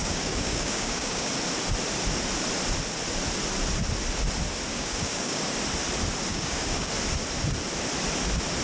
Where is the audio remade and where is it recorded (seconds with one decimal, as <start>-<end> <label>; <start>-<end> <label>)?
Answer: 0.0-1.3 remade; 1.3-4.7 recorded; 4.7-5.4 remade; 5.4-6.3 recorded; 6.3-6.9 remade; 6.9-8.6 recorded